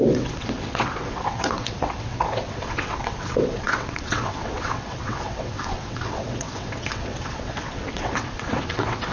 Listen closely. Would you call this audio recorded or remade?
remade